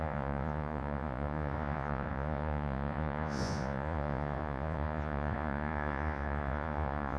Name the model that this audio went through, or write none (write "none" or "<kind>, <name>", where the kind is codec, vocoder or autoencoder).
vocoder, Vocos